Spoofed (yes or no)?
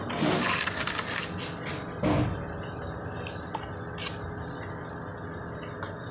no